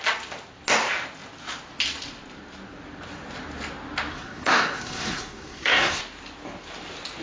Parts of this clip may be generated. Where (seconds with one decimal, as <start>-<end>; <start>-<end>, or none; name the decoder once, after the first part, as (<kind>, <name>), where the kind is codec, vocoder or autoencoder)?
4.1-6.0 (codec, SNAC)

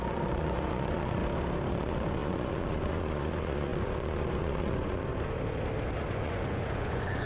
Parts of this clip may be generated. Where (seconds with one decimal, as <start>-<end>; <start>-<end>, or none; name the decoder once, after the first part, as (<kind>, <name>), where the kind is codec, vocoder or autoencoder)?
0.0-1.2 (vocoder, Vocos); 1.7-5.1; 6.1-7.3

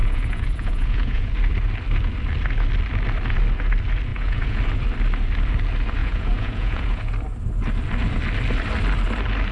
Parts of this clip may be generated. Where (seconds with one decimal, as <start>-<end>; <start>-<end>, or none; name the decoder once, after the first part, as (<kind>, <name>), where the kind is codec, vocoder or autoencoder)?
0.0-1.3 (vocoder, Vocos); 4.1-4.6; 6.0-7.1

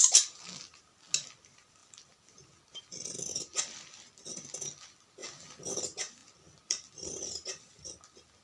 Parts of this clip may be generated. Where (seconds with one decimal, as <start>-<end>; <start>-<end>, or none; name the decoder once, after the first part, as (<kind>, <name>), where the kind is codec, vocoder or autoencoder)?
1.8-4.3 (vocoder, BigVGAN v2); 6.2-7.1

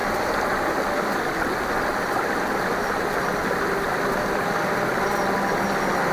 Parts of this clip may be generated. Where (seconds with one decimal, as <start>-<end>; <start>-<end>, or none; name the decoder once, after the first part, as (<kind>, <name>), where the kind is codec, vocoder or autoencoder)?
none